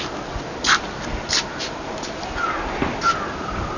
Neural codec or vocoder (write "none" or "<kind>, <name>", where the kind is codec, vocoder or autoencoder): none